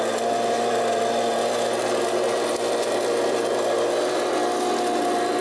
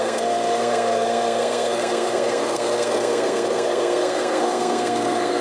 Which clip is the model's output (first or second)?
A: second